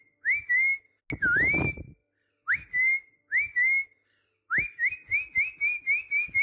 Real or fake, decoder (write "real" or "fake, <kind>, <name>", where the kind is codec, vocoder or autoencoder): real